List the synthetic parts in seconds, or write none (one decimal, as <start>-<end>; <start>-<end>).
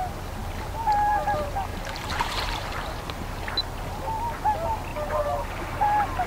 1.7-3.4